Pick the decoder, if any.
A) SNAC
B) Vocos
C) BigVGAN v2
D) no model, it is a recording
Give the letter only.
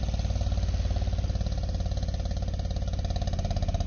D